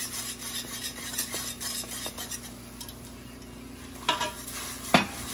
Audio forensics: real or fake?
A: real